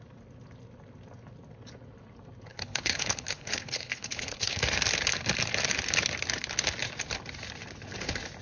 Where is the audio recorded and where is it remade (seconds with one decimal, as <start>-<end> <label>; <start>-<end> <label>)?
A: 0.0-2.5 recorded; 2.5-4.6 remade; 4.6-8.4 recorded